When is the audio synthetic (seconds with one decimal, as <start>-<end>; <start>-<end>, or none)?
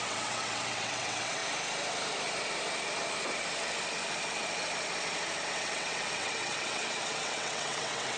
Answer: 0.0-1.4; 5.5-8.2